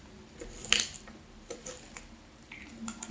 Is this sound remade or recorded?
recorded